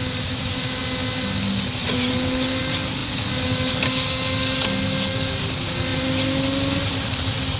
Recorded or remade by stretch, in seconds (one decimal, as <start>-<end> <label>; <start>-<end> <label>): 0.0-0.8 remade; 0.8-1.8 recorded; 1.8-2.6 remade; 2.6-7.6 recorded